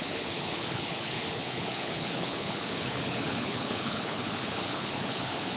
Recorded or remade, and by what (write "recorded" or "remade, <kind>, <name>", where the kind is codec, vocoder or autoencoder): remade, codec, HILCodec